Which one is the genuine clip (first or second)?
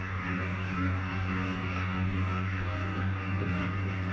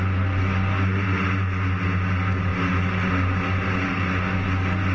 second